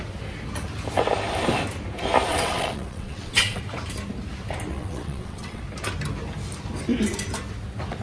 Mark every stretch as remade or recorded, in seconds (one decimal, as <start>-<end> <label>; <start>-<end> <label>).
0.0-2.3 recorded; 2.3-3.6 remade; 3.6-4.7 recorded; 4.7-5.6 remade; 5.6-8.0 recorded